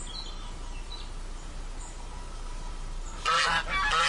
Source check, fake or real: real